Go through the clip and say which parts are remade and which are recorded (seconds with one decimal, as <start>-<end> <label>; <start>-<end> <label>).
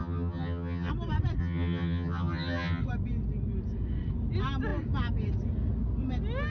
0.0-0.9 remade; 0.9-1.4 recorded; 1.4-2.8 remade; 2.8-6.5 recorded